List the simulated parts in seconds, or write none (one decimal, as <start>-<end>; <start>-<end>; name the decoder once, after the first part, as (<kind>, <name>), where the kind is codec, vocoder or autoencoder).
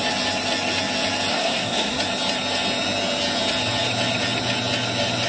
1.3-2.0 (codec, SNAC)